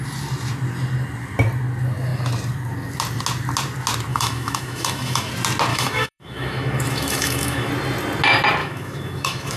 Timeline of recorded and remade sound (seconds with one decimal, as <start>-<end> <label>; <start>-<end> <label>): 0.0-4.1 recorded; 4.1-5.3 remade; 5.3-5.7 recorded; 5.7-7.7 remade; 7.7-8.6 recorded; 8.6-9.6 remade